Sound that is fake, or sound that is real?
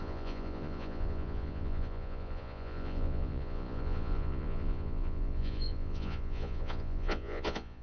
fake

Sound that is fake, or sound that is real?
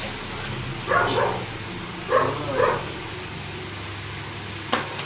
real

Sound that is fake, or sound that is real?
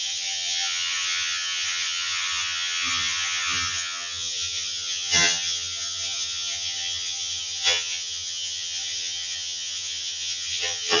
fake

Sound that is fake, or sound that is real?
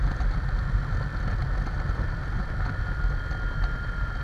real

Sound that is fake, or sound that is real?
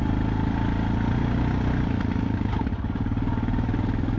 real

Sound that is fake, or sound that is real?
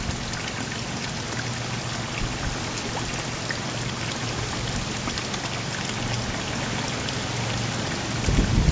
real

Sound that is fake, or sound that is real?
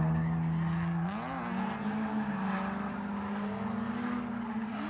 real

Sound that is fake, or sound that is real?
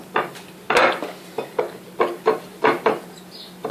real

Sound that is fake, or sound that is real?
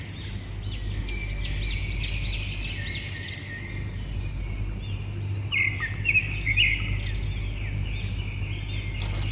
real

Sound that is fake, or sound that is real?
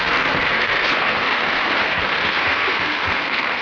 fake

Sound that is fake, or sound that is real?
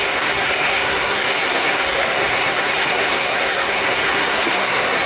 fake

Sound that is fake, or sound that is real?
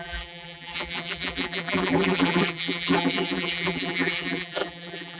fake